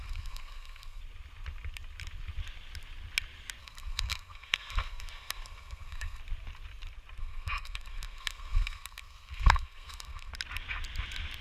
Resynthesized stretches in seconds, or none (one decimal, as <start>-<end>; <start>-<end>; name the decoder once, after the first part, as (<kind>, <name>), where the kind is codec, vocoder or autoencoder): 0.0-1.0 (codec, SNAC); 3.6-6.2; 7.2-10.3